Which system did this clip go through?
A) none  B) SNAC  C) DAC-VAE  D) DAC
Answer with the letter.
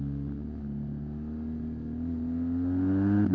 A